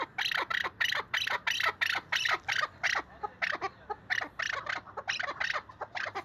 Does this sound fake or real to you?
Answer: fake